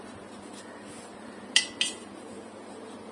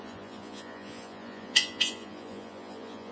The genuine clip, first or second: first